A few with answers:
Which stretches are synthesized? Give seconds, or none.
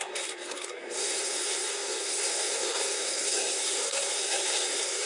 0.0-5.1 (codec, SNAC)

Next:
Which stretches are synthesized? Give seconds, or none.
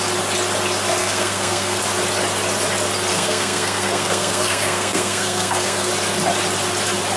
1.0-1.8 (codec, SNAC); 3.1-5.9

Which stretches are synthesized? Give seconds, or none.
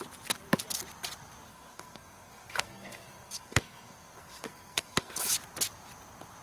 1.5-5.3 (codec, SNAC)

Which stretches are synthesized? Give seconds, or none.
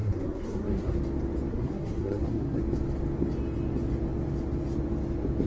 0.0-1.0 (codec, SNAC); 1.5-2.6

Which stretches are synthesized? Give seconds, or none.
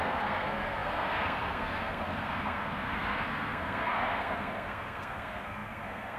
0.0-6.2 (codec, SNAC)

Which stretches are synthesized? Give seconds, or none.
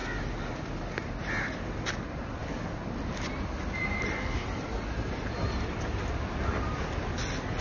none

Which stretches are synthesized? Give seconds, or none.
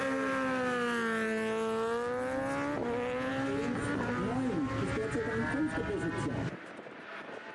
none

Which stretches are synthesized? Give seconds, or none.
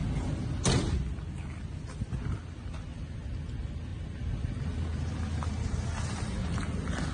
none